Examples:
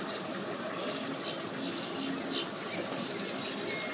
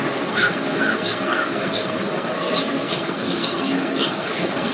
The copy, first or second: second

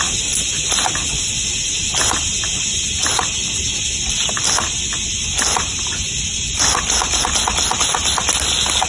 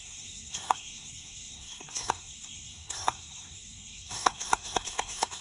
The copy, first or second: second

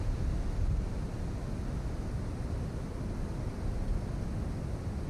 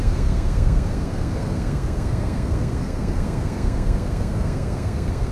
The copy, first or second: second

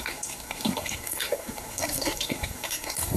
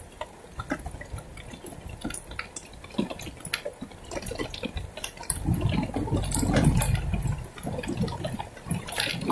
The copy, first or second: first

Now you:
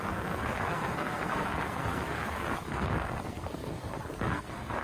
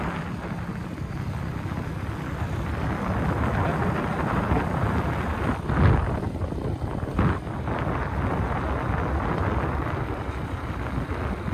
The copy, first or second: first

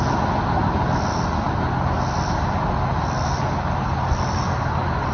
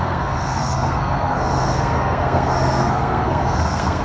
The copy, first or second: second